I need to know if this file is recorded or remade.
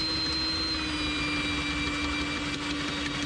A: recorded